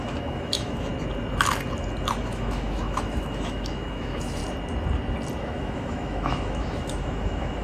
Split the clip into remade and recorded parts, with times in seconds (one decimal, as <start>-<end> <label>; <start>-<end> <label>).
0.0-0.9 remade; 0.9-2.2 recorded; 2.2-4.4 remade; 4.4-5.4 recorded; 5.4-7.6 remade